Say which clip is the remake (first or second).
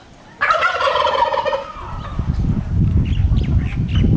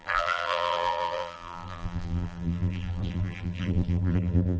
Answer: second